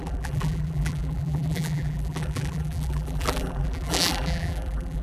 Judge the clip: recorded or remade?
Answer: remade